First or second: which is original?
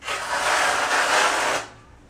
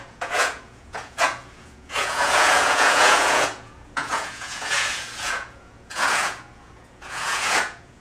first